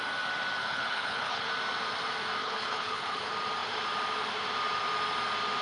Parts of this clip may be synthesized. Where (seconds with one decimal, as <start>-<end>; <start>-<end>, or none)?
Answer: 0.6-1.5; 2.4-3.2